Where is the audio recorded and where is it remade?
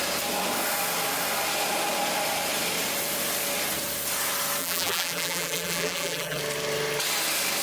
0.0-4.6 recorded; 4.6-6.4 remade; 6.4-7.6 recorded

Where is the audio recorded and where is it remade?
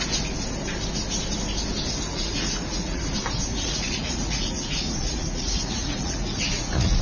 0.0-2.1 recorded; 2.1-3.0 remade; 3.0-3.5 recorded; 3.5-7.0 remade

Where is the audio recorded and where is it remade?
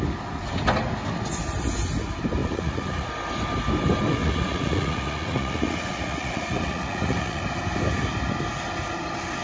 0.0-2.4 recorded; 2.4-3.1 remade; 3.1-4.2 recorded; 4.2-7.4 remade; 7.4-9.4 recorded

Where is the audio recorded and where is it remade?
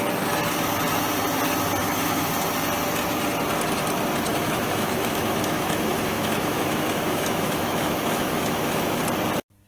0.0-1.8 recorded; 1.8-2.3 remade; 2.3-4.3 recorded; 4.3-9.0 remade; 9.0-9.7 recorded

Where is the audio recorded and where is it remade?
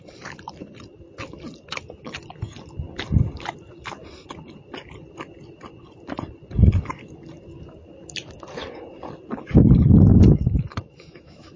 0.0-10.1 recorded; 10.1-11.6 remade